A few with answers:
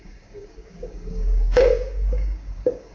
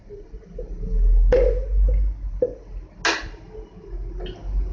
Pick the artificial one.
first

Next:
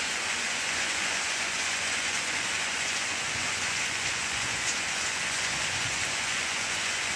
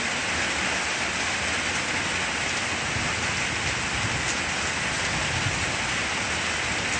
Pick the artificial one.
first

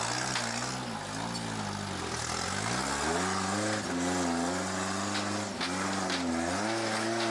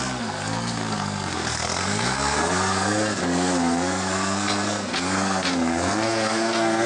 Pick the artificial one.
second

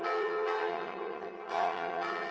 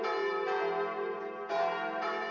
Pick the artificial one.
first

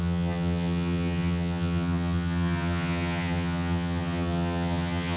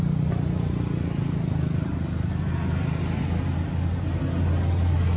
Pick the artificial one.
first